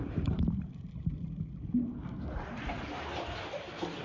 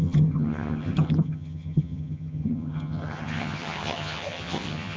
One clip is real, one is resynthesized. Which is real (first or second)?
first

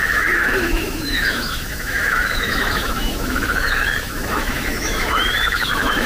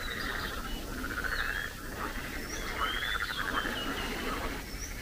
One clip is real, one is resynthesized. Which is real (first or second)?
second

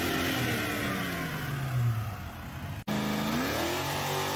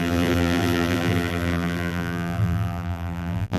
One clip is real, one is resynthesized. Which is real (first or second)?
first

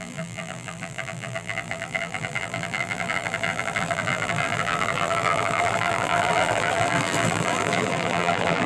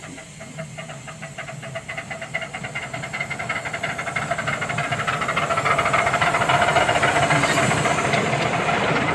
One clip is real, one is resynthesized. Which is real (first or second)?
second